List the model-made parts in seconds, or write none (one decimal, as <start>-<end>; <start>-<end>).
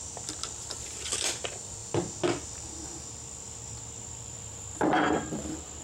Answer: 0.0-1.8; 4.1-5.8